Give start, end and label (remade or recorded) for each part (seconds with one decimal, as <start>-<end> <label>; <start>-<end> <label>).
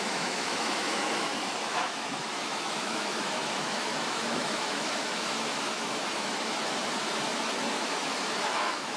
0.0-6.8 remade; 6.8-7.7 recorded; 7.7-9.0 remade